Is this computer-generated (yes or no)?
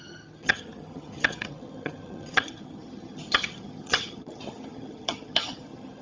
yes